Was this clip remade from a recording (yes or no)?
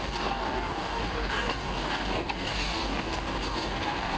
yes